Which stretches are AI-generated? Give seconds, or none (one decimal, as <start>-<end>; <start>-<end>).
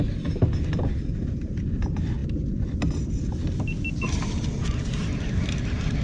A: none